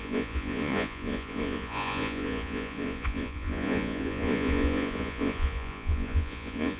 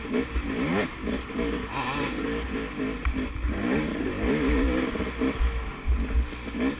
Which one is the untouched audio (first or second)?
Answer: second